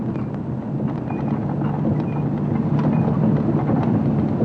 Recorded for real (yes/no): yes